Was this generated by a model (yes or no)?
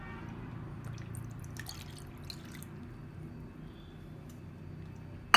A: no